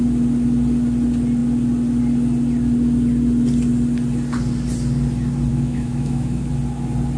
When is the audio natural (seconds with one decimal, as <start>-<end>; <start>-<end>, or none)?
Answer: 0.0-5.5; 6.5-7.2